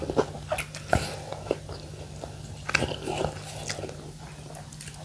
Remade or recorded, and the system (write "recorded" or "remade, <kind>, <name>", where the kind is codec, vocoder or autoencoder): recorded